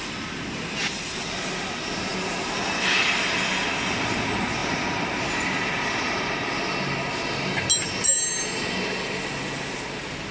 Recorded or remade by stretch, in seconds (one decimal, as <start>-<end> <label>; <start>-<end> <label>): 0.0-10.3 recorded